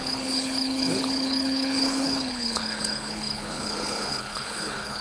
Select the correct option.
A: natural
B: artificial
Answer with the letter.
B